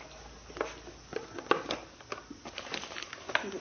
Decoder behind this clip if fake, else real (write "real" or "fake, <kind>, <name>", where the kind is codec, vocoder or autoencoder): real